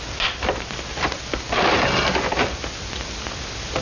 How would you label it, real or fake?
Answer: real